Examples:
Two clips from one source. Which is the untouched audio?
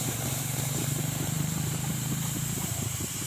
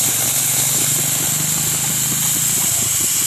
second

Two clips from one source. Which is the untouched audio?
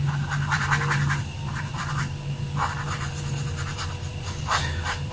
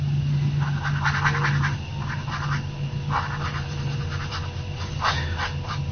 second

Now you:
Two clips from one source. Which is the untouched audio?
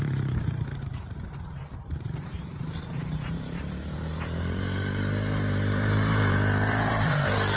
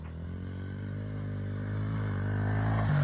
second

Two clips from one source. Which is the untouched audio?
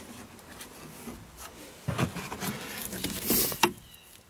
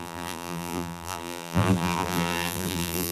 first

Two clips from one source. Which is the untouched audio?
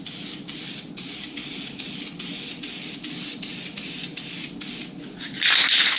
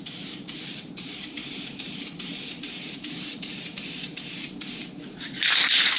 first